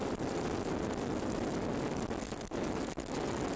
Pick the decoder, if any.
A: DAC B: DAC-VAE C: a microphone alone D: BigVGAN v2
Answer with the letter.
C